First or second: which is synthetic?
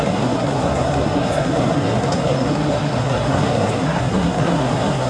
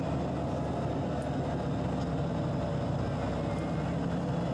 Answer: first